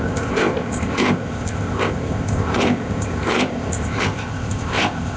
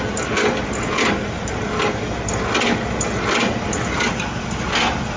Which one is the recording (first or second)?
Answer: second